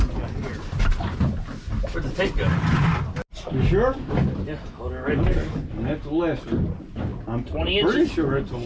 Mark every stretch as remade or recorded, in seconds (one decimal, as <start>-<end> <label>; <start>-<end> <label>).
0.0-8.7 recorded